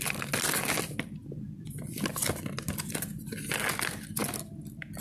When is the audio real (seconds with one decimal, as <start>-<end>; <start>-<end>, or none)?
0.0-5.0